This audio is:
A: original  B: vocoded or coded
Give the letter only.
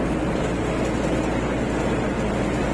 A